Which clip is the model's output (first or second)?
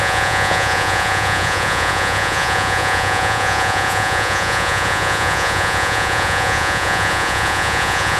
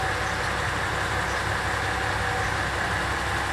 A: first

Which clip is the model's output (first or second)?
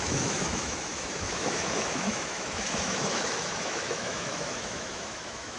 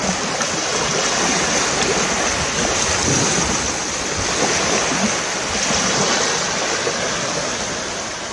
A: first